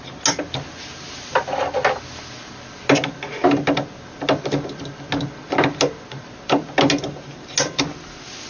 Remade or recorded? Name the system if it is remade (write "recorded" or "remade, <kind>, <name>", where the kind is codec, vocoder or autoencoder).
recorded